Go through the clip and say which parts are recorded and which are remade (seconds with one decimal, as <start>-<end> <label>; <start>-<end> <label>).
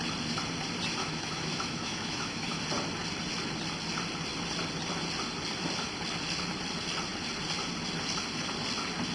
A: 0.0-1.0 recorded; 1.0-2.6 remade; 2.6-9.1 recorded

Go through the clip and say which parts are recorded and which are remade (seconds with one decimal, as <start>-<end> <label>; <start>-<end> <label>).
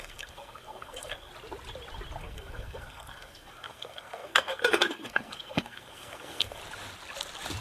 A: 0.0-1.3 remade; 1.3-2.2 recorded; 2.2-6.6 remade; 6.6-7.6 recorded